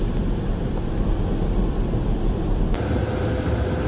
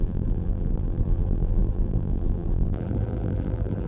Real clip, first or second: first